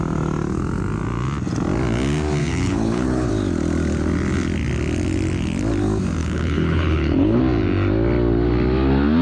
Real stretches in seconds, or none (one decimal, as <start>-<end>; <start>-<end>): 0.0-2.4; 3.3-6.2; 7.4-9.2